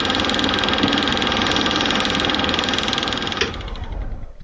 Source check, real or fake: real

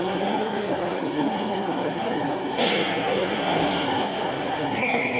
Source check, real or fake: fake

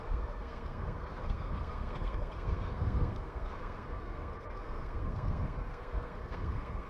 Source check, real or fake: fake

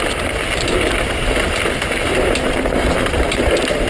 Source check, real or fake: real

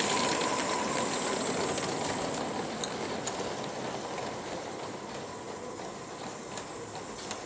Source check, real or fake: real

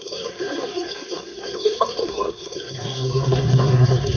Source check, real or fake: fake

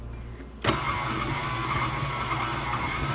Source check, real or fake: real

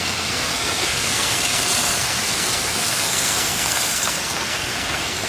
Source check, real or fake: fake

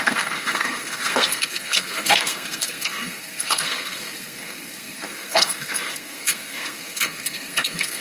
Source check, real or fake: fake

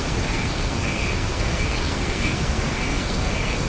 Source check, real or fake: fake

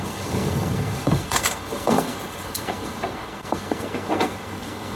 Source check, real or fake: fake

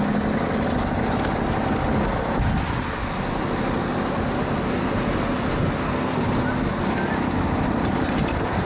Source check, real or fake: real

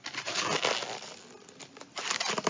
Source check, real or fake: real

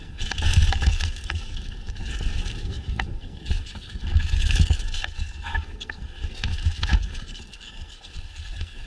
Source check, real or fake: fake